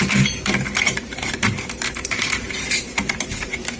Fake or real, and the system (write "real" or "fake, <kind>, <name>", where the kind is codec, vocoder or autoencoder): fake, vocoder, BigVGAN v2